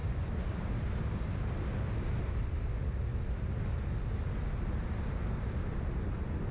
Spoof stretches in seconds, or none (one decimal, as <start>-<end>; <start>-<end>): 0.0-1.4